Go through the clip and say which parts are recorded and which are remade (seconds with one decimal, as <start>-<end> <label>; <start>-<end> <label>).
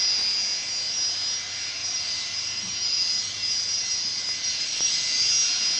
0.0-1.8 recorded; 1.8-5.3 remade; 5.3-5.8 recorded